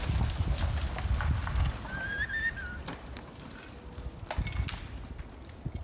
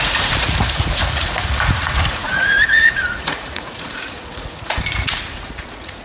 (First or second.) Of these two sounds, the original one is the first